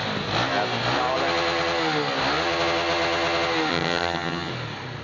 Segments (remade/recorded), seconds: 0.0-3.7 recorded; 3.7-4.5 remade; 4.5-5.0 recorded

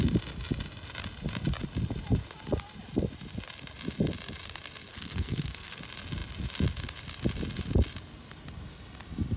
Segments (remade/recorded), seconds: 0.0-4.9 recorded; 4.9-5.8 remade; 5.8-9.4 recorded

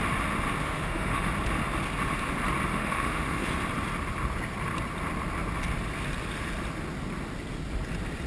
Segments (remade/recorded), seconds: 0.0-0.6 recorded; 0.6-1.3 remade; 1.3-2.7 recorded; 2.7-3.5 remade; 3.5-8.3 recorded

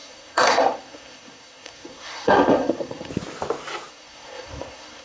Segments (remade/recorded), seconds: 0.0-3.1 remade; 3.1-3.9 recorded; 3.9-5.0 remade

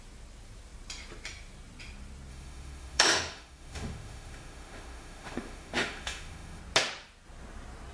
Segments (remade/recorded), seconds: 0.0-2.3 recorded; 2.3-6.6 remade; 6.6-7.9 recorded

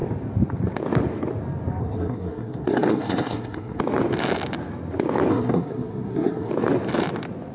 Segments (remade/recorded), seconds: 0.0-1.8 recorded; 1.8-3.8 remade; 3.8-5.3 recorded; 5.3-6.5 remade; 6.5-7.5 recorded

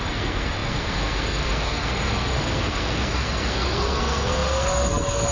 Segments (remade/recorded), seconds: 0.0-5.3 remade

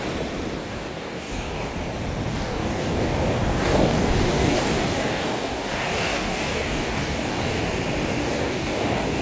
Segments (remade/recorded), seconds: 0.0-0.6 recorded; 0.6-1.7 remade; 1.7-2.3 recorded; 2.3-7.6 remade; 7.6-8.2 recorded; 8.2-9.2 remade